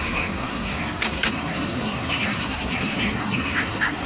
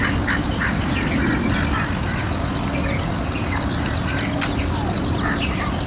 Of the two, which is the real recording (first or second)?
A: second